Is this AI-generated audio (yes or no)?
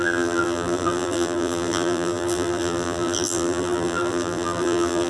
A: yes